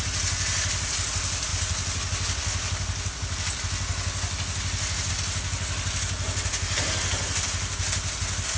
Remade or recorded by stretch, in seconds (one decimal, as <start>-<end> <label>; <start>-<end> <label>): 0.0-8.6 recorded